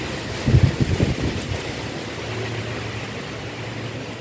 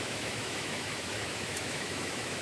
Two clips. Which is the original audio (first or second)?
first